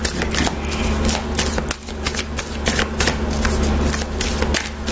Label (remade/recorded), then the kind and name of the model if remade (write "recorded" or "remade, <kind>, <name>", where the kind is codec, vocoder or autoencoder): recorded